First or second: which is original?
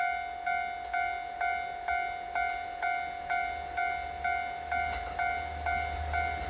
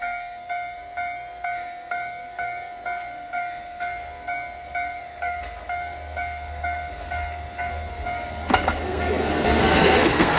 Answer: first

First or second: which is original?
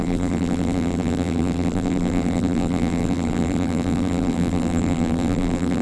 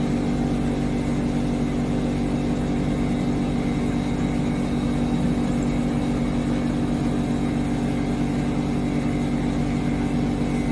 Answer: second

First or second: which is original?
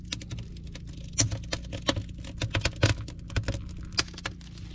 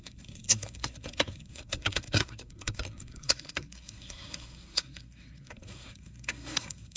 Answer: first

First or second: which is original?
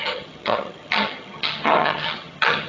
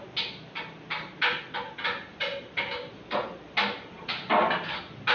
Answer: second